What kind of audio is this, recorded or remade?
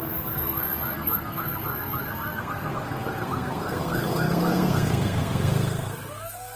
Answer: remade